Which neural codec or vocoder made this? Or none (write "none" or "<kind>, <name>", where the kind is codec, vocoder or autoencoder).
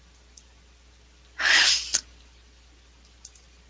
none